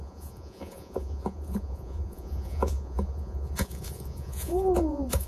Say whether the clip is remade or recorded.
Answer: remade